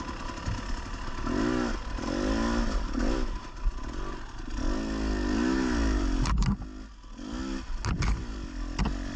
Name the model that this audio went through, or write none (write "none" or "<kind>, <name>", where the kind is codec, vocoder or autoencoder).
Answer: none